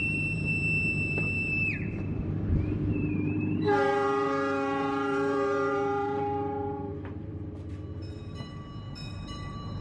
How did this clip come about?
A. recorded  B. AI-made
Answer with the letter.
B